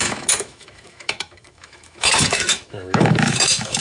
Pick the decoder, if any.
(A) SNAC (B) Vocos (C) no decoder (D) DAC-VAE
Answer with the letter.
D